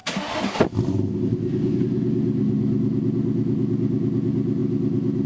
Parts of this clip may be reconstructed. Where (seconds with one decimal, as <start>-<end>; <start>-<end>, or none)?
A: none